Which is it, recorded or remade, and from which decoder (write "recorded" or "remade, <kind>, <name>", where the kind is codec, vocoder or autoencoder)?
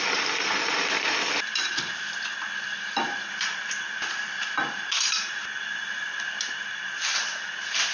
remade, vocoder, BigVGAN v2